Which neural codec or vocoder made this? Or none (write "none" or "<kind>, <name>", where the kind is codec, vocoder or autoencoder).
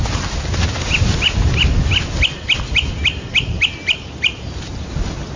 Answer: none